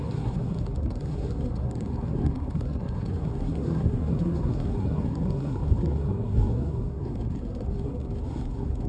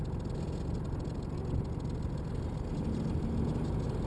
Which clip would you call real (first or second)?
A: second